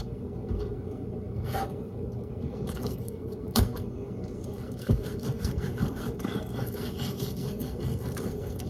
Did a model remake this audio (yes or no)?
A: yes